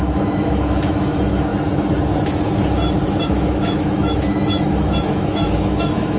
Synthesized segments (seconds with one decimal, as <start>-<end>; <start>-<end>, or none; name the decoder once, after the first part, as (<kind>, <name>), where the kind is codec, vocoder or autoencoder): 0.0-1.5 (autoencoder, DAC-VAE); 3.2-6.2